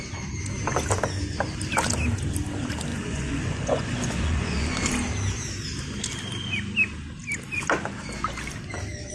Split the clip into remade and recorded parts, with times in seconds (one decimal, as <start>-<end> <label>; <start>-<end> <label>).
0.0-2.9 recorded; 2.9-4.9 remade; 4.9-9.1 recorded